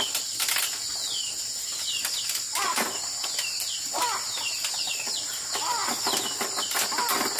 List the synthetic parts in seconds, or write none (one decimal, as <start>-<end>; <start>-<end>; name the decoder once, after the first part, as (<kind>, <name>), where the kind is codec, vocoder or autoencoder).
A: none